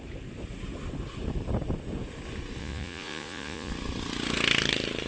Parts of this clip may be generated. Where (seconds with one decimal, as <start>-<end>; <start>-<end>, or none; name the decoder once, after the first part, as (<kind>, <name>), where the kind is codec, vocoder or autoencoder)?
2.6-3.7 (vocoder, Vocos)